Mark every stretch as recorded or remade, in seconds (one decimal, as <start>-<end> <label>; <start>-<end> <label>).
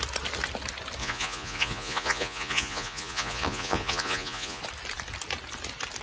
0.0-1.0 recorded; 1.0-4.6 remade; 4.6-6.0 recorded